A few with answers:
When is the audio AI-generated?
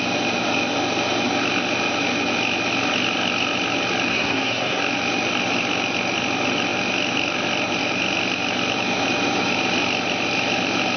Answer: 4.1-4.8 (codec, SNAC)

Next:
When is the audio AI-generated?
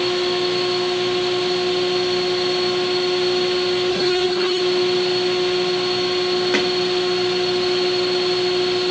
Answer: 3.9-4.6 (codec, SNAC)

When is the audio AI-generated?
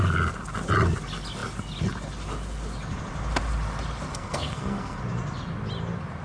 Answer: 4.1-5.0 (codec, SNAC)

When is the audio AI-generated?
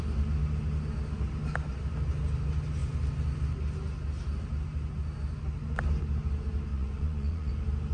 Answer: 6.7-7.5 (vocoder, Vocos)